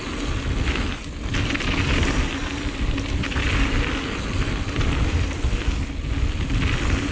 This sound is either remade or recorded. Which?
recorded